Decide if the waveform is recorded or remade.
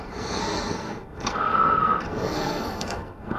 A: remade